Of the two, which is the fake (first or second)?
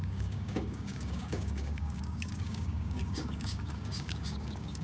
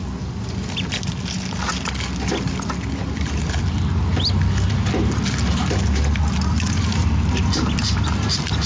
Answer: first